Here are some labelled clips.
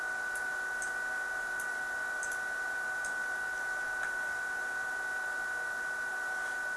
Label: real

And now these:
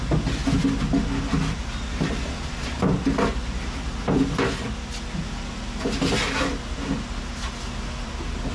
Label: real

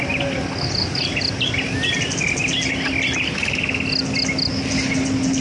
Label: real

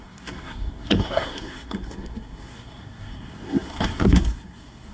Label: fake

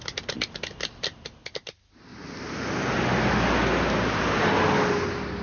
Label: real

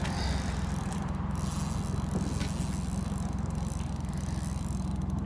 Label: real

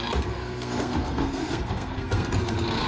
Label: fake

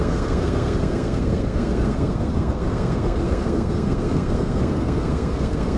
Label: fake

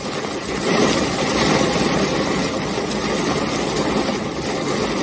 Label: real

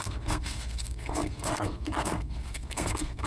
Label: fake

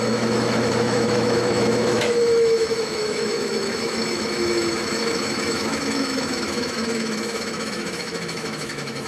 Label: fake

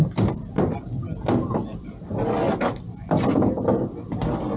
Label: real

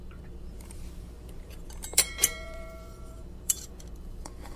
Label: fake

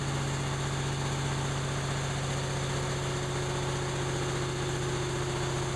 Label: real